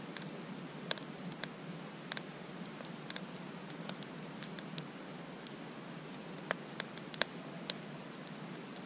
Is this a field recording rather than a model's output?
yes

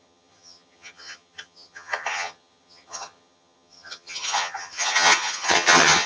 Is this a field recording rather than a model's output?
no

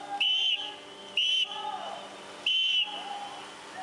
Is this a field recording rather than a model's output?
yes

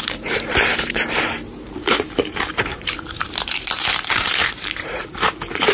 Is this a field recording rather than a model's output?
no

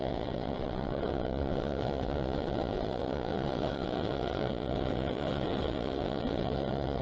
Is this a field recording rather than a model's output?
no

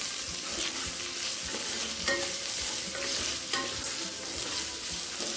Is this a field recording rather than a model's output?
yes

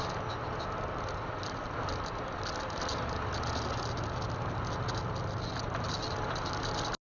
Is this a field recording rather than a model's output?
yes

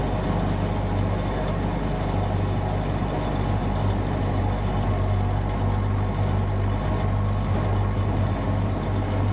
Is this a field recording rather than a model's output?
yes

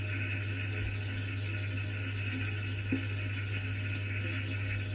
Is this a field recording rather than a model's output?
yes